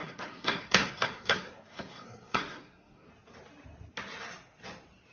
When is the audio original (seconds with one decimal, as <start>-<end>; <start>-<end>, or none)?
3.1-5.1